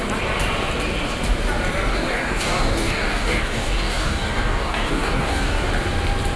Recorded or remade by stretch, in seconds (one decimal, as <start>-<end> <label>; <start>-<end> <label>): 0.0-1.9 recorded; 1.9-5.7 remade; 5.7-6.4 recorded